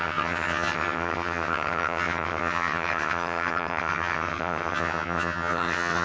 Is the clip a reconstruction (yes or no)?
yes